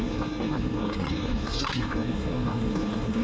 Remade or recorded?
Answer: remade